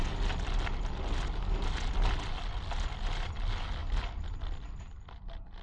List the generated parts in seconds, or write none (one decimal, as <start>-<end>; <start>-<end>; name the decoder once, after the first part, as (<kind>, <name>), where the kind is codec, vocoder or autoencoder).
none